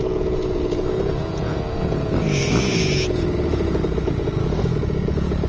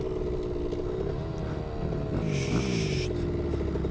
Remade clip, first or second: first